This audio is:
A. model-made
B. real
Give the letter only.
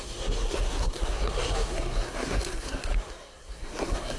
A